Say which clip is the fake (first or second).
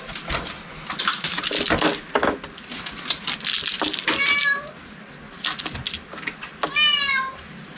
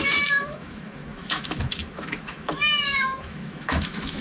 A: second